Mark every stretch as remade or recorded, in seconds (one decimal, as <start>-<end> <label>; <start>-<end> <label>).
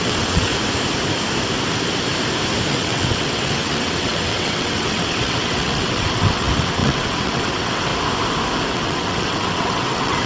0.0-0.5 remade; 0.5-2.7 recorded; 2.7-7.9 remade; 7.9-8.7 recorded; 8.7-10.3 remade